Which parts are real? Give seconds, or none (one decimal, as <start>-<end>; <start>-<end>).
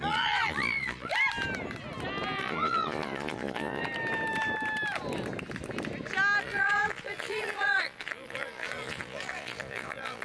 1.1-2.4; 3.8-6.4